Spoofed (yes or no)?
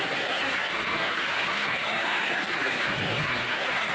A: yes